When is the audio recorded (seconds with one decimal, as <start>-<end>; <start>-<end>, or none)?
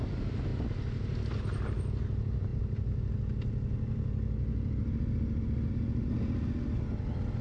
0.0-7.4